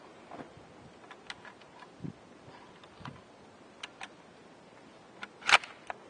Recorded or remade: recorded